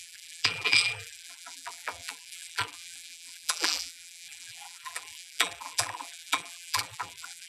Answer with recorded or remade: remade